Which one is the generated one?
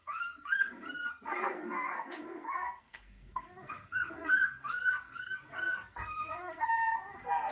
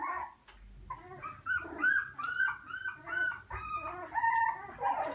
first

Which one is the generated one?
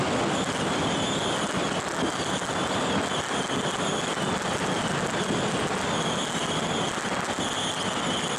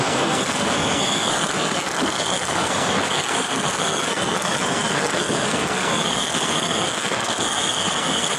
second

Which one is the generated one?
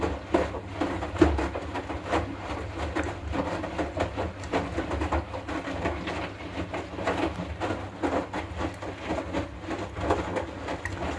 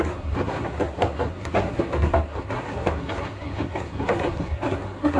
second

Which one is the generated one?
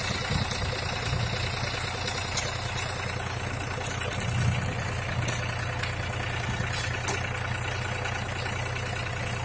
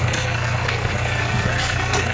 second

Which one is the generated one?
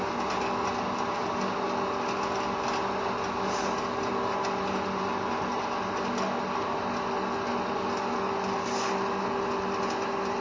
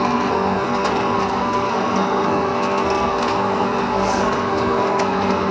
second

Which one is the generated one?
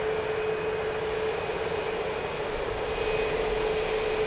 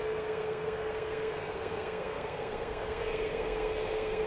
second